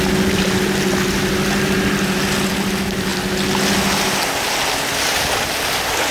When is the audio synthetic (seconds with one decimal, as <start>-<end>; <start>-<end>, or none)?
none